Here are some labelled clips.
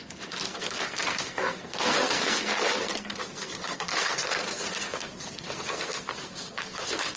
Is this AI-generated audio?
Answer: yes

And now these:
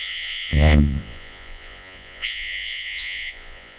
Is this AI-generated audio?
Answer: yes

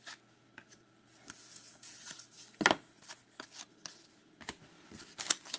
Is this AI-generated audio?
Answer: no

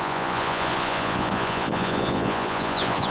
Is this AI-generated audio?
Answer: yes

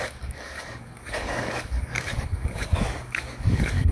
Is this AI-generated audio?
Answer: yes